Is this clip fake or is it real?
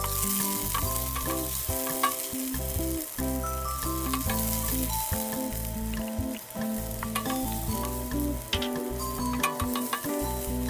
real